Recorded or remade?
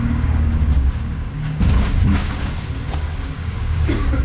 remade